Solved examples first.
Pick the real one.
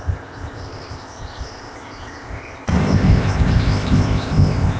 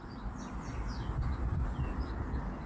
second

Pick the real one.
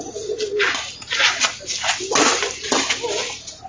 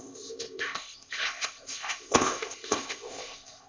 first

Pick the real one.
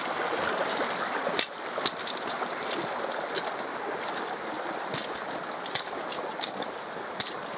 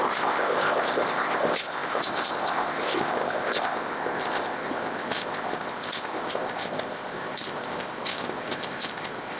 first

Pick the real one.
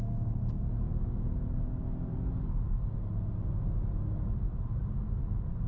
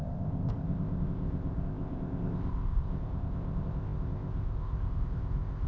first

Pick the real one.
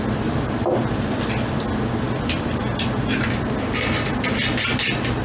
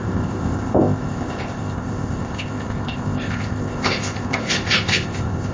first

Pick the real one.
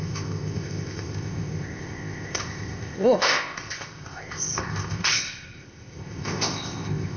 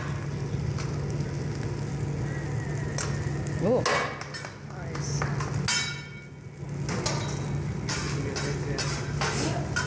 second